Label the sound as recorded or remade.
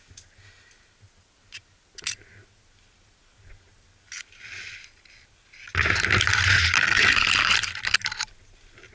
recorded